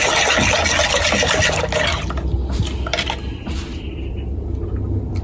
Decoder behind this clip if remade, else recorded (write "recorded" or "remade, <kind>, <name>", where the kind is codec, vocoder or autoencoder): recorded